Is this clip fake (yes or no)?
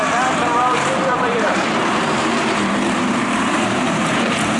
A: yes